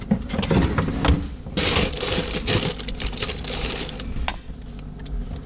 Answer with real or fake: real